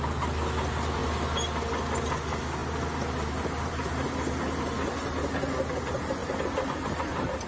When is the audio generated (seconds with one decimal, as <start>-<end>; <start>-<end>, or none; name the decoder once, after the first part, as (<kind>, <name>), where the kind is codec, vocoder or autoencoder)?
none